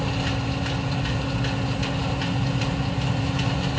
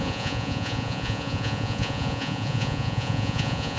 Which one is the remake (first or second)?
second